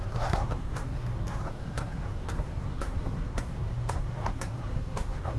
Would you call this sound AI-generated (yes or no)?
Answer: yes